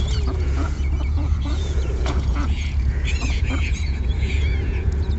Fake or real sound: fake